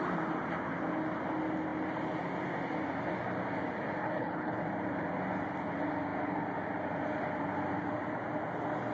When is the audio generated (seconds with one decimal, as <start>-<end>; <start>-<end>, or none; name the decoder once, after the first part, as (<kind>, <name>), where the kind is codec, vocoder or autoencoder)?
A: 4.0-4.6 (codec, HILCodec)